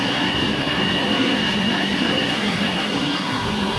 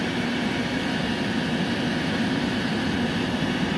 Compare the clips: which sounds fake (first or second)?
first